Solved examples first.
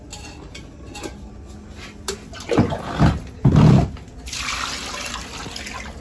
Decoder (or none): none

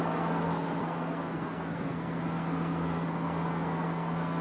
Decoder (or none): codec, SNAC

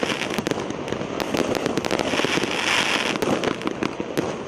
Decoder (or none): none